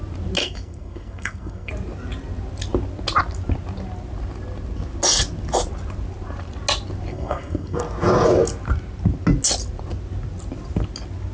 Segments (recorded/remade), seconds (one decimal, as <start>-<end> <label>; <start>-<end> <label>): 0.0-0.4 recorded; 0.4-1.7 remade; 1.7-7.1 recorded; 7.1-7.8 remade; 7.8-11.3 recorded